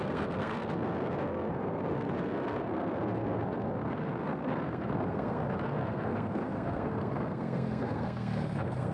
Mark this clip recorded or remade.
remade